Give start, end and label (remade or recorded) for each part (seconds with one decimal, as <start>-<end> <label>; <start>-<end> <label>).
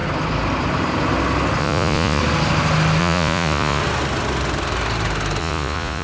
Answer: 0.0-1.6 recorded; 1.6-2.2 remade; 2.2-3.0 recorded; 3.0-3.8 remade; 3.8-5.4 recorded; 5.4-6.0 remade